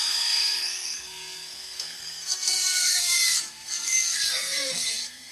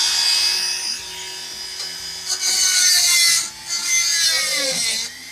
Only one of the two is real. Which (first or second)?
second